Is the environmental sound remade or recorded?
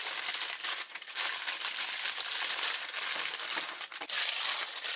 recorded